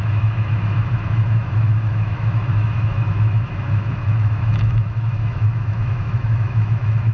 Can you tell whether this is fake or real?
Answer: fake